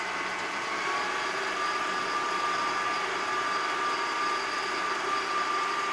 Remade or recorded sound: recorded